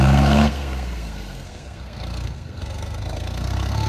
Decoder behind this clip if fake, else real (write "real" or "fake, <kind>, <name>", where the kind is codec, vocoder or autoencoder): fake, codec, SNAC